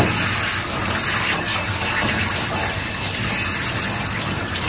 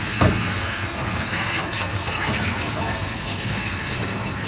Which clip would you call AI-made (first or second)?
second